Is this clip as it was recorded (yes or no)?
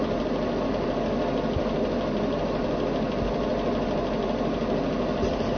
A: yes